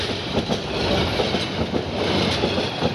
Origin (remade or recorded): recorded